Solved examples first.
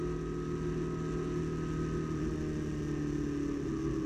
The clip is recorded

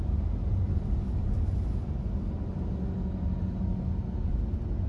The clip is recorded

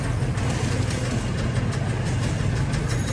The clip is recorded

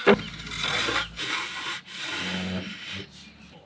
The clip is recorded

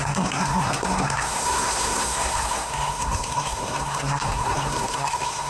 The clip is remade